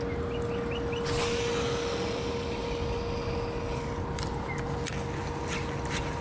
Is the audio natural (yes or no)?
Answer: yes